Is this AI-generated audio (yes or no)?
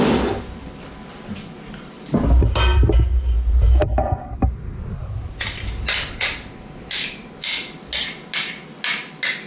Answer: no